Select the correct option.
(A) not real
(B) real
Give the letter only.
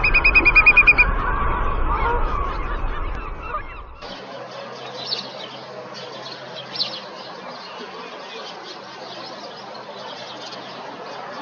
B